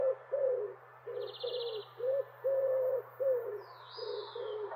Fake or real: real